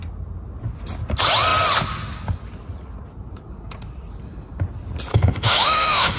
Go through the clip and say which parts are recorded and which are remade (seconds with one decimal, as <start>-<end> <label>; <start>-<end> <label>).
0.0-5.1 recorded; 5.1-6.2 remade